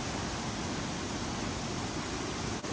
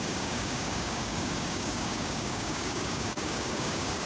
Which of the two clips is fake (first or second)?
second